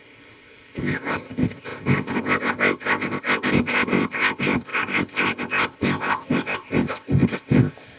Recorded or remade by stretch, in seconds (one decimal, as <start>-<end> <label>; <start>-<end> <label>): 0.0-8.0 remade